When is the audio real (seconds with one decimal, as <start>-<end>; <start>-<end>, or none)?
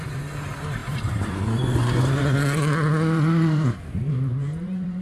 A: none